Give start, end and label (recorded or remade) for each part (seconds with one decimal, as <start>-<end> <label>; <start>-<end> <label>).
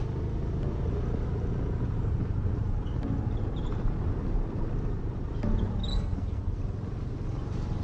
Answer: 0.0-5.9 recorded; 5.9-6.6 remade; 6.6-7.8 recorded